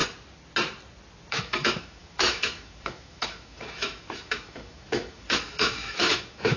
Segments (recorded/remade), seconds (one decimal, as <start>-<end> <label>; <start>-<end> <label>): 0.0-1.3 recorded; 1.3-6.6 remade